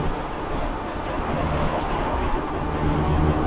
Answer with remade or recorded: remade